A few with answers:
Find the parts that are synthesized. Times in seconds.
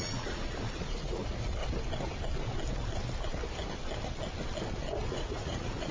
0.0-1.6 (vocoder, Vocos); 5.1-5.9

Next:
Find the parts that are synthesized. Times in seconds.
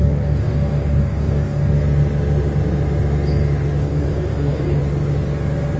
0.0-1.7 (codec, DAC); 3.8-4.8